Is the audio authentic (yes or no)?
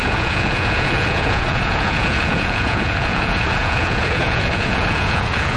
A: no